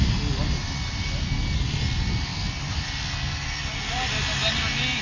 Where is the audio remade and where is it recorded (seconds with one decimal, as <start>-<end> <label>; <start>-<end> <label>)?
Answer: 0.0-5.0 recorded